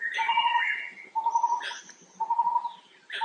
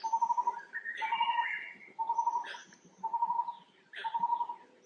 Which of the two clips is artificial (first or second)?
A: second